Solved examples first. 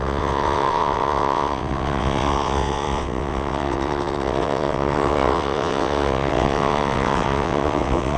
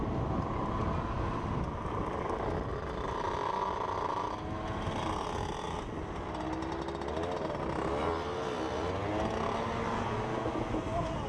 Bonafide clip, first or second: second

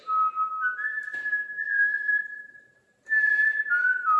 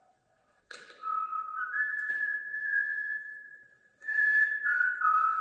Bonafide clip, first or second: first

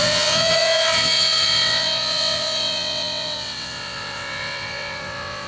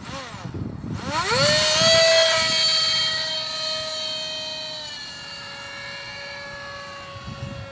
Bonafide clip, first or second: second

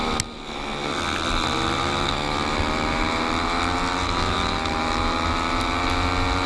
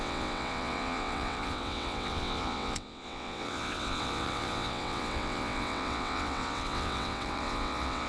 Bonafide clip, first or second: first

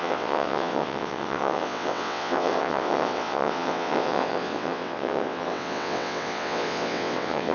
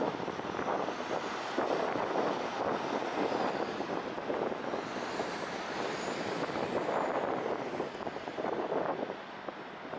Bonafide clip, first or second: second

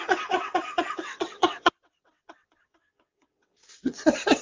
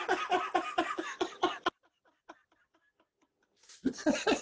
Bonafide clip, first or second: second